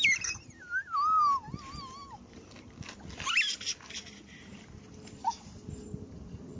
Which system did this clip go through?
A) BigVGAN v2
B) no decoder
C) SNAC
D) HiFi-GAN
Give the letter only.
B